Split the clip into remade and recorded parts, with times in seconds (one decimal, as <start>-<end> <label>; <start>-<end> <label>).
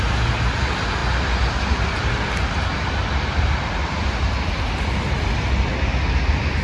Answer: 0.0-6.6 recorded